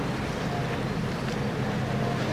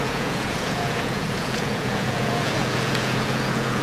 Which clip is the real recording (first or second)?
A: first